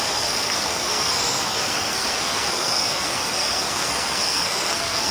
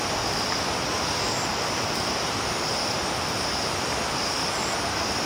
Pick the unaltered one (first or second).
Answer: second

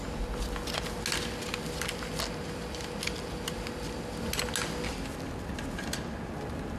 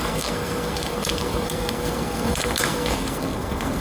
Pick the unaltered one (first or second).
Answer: first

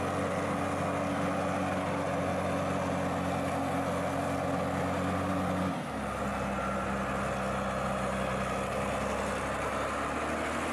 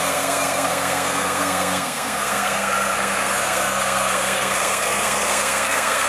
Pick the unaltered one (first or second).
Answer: first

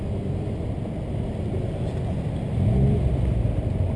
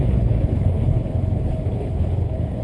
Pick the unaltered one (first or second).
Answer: first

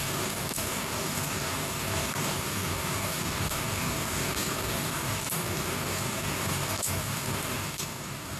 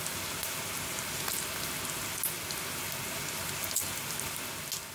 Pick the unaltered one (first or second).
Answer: second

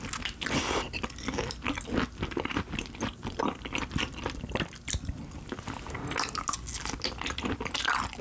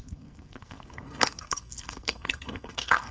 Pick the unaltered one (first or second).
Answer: first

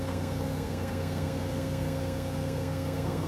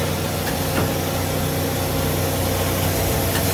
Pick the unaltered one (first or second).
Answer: second